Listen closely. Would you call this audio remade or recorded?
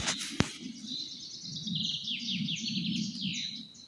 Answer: recorded